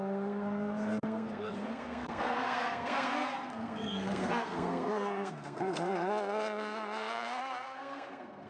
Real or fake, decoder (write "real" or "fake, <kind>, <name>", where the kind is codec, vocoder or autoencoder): fake, codec, SNAC